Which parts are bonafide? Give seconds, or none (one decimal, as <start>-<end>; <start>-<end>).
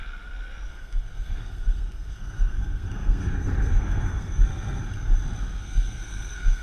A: 0.0-0.7; 4.8-5.4